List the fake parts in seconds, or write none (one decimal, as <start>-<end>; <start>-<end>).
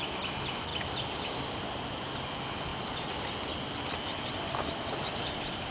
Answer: none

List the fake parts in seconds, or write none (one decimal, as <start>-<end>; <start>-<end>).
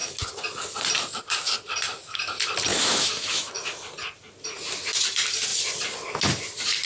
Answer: 2.7-3.5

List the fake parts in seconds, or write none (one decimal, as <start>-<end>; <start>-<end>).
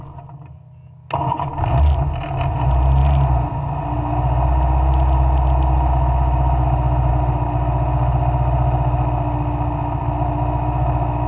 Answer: none